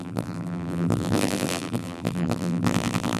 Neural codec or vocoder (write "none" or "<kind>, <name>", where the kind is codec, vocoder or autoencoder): vocoder, BigVGAN v2